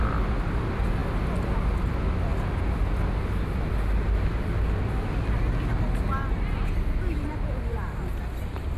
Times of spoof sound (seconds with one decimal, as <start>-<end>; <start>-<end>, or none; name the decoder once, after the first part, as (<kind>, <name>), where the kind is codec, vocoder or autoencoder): none